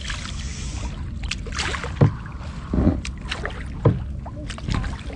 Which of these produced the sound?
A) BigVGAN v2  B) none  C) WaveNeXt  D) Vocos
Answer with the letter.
B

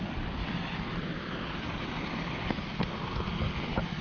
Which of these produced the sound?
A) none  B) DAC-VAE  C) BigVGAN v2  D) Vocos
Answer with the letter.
A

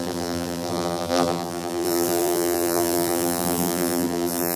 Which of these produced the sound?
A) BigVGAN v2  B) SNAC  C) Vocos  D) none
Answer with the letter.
A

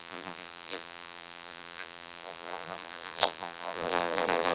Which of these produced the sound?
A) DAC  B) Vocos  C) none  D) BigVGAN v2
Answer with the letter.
D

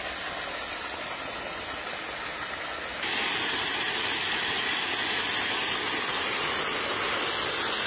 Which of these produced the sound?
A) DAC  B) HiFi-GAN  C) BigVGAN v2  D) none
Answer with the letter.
D